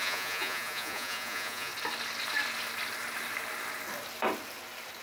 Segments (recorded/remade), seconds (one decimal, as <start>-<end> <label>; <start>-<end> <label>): 0.0-1.7 remade; 1.7-5.0 recorded

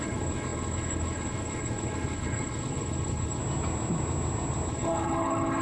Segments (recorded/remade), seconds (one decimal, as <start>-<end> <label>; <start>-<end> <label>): 0.0-3.4 remade; 3.4-4.7 recorded; 4.7-5.6 remade

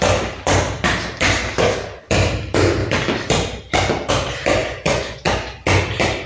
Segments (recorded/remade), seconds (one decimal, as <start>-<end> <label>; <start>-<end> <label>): 0.0-4.6 recorded; 4.6-5.3 remade; 5.3-6.3 recorded